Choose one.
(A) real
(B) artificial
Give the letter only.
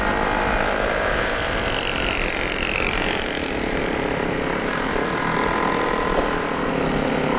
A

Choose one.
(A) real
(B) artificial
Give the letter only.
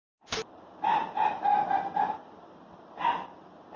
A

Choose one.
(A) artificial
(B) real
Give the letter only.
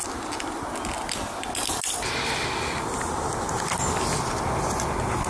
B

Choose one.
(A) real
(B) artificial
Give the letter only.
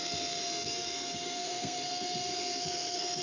B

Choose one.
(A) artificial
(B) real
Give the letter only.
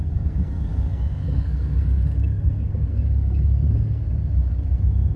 A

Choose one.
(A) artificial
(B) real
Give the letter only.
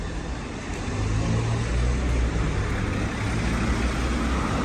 B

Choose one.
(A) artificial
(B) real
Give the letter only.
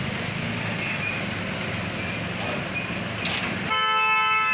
B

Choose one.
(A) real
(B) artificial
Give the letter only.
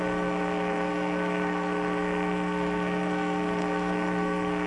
B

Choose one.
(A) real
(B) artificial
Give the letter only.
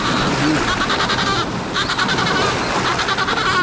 A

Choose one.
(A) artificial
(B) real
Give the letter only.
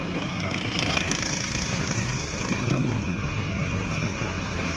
A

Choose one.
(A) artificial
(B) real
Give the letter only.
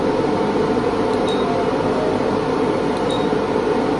B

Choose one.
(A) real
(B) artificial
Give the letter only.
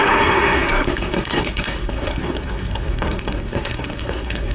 B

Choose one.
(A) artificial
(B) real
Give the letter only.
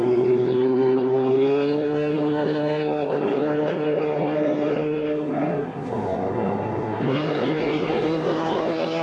A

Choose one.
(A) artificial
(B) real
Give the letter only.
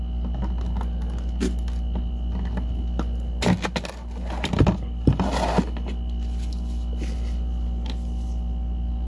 B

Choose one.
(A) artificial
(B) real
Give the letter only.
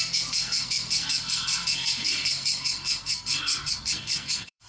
A